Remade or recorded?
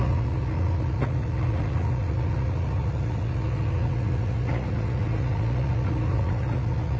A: remade